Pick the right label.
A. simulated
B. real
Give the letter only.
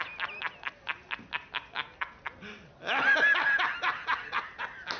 B